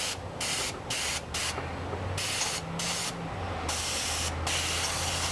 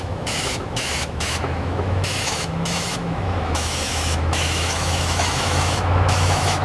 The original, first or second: first